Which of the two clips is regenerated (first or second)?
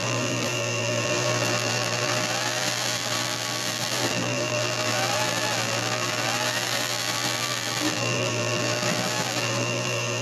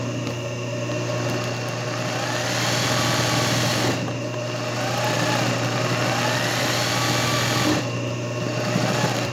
first